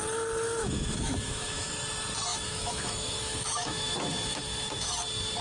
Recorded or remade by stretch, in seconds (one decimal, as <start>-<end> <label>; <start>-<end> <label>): 0.0-0.6 recorded; 0.6-1.7 remade; 1.7-2.3 recorded; 2.3-4.9 remade; 4.9-5.4 recorded